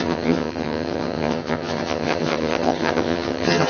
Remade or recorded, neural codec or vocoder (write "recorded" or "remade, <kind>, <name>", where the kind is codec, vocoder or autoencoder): remade, vocoder, HiFi-GAN